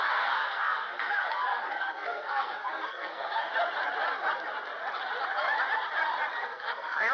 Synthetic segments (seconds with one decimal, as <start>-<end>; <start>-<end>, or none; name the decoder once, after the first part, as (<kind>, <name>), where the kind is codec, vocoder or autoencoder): 0.0-3.5 (codec, SNAC); 6.4-7.1